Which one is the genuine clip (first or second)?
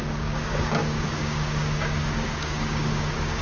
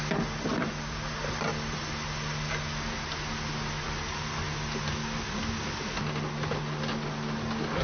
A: second